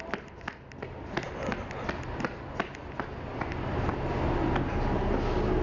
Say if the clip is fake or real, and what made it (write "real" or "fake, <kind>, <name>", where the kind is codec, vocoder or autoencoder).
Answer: real